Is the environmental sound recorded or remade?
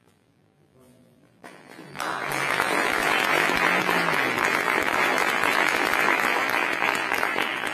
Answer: remade